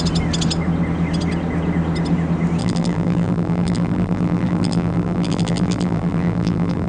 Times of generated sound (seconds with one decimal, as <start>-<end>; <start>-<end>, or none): 2.6-6.9